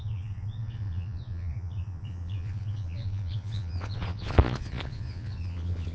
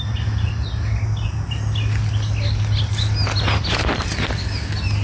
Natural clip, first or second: second